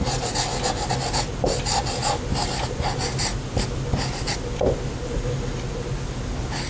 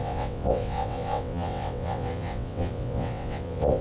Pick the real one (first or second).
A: first